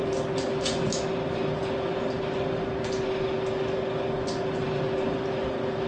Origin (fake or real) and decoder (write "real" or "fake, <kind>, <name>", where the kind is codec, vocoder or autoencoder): real